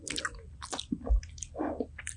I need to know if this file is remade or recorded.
recorded